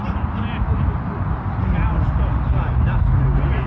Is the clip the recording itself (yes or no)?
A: yes